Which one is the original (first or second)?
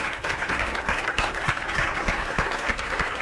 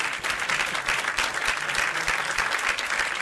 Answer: second